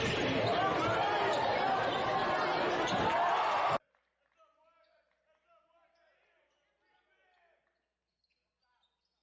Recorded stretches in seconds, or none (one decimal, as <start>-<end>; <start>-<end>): 0.0-9.2